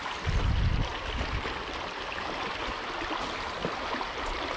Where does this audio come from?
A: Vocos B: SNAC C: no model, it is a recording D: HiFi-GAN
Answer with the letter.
C